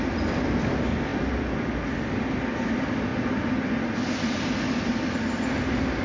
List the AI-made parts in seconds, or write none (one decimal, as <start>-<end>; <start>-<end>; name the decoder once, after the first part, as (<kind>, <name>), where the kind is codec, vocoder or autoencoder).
none